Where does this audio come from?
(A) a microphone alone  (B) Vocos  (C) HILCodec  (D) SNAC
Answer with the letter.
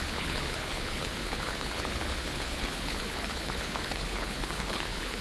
C